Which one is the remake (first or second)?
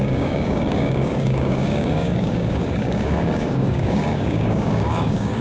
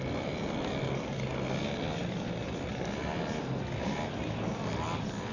first